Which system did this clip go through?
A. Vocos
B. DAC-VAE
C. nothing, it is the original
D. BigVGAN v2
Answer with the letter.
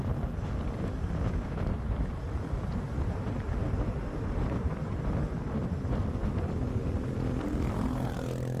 C